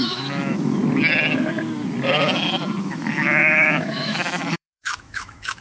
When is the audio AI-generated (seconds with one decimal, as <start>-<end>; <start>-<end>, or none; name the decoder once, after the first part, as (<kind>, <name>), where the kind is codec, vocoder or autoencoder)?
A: 0.0-0.8 (autoencoder, DAC-VAE); 2.8-5.6